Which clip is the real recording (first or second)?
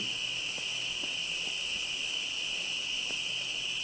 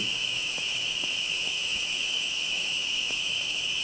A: first